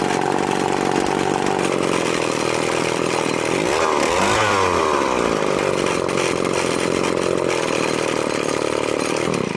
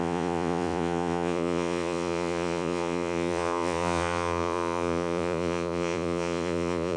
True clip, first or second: first